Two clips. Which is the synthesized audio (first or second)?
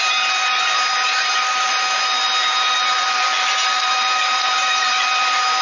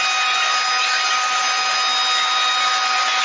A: first